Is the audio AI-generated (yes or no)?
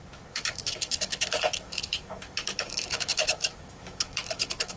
yes